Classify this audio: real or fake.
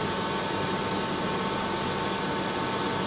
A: real